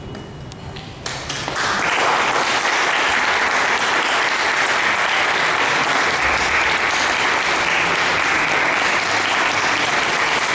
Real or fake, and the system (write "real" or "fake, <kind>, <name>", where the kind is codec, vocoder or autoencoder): real